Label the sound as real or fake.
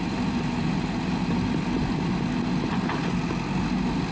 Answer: real